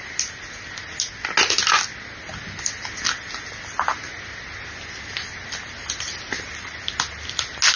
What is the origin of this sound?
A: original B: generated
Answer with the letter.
A